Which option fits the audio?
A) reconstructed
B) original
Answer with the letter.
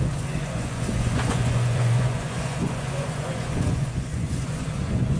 A